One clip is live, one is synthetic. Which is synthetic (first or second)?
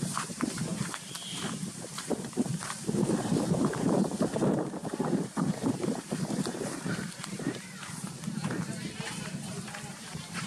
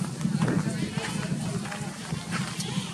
first